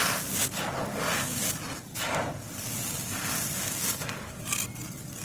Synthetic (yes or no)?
no